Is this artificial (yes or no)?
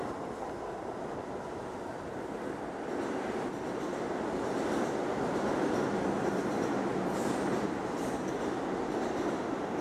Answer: no